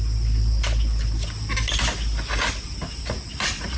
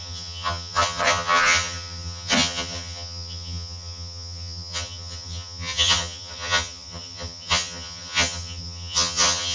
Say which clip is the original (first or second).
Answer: first